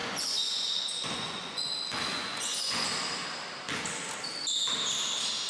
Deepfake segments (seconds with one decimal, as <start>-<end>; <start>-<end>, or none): 0.0-1.7; 2.1-2.9